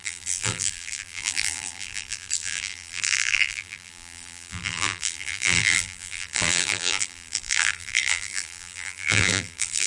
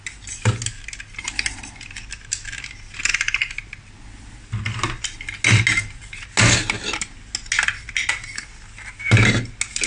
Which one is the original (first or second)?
second